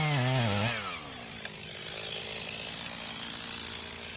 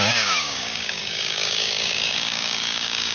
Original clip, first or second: first